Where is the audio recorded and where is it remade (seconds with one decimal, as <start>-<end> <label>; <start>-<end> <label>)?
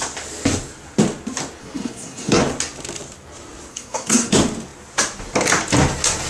0.0-1.6 recorded; 1.6-2.4 remade; 2.4-3.7 recorded; 3.7-4.3 remade; 4.3-6.3 recorded